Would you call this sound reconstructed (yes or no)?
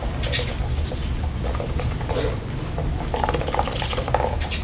no